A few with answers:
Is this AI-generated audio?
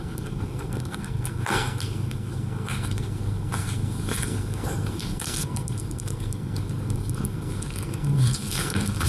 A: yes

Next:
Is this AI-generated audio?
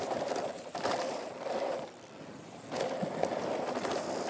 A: yes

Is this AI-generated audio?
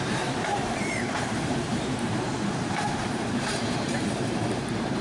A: yes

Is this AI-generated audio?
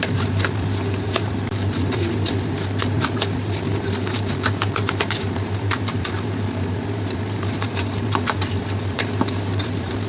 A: yes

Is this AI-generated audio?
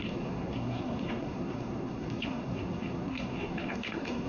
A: yes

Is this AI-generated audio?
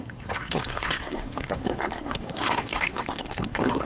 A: yes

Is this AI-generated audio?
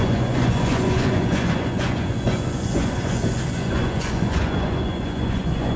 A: yes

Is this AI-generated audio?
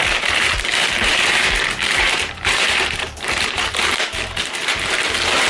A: yes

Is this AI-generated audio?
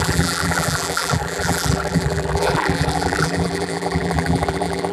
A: yes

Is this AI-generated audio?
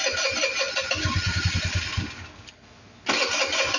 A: no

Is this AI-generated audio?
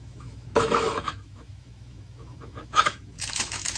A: yes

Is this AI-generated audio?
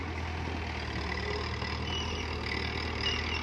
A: no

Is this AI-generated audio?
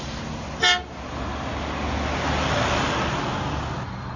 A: no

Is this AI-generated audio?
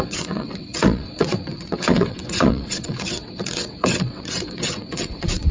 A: yes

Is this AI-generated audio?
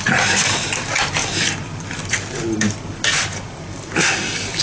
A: no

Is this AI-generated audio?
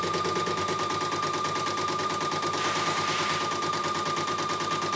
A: no